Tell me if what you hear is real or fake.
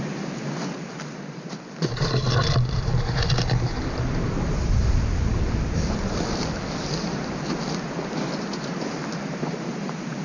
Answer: real